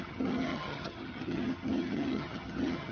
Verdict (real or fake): fake